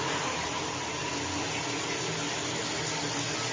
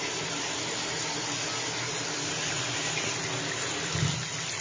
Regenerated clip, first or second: second